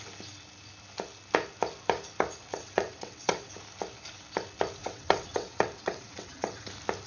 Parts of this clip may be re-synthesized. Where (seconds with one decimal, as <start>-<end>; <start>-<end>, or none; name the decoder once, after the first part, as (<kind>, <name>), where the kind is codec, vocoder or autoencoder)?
2.5-3.5 (vocoder, WaveNeXt); 4.8-6.6